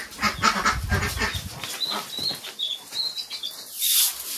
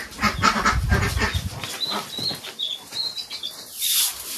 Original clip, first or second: first